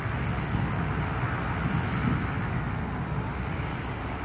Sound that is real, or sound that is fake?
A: real